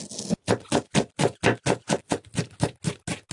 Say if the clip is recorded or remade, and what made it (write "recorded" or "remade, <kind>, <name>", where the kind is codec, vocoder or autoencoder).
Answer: recorded